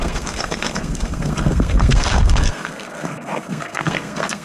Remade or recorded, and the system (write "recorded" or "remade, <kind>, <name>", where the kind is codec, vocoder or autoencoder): remade, codec, SNAC